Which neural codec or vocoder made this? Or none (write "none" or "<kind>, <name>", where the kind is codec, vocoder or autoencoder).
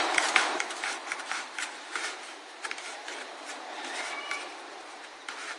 vocoder, BigVGAN v2